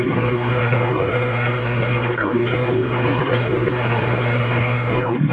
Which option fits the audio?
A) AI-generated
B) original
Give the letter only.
A